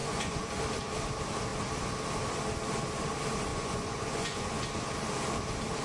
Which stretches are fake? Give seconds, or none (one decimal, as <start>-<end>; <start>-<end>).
0.0-0.6; 3.5-4.6